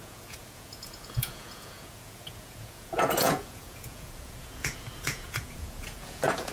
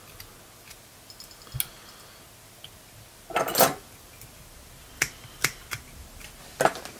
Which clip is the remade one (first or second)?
first